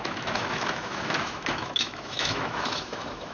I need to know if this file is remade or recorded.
remade